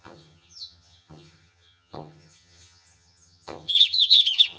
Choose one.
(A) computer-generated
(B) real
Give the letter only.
A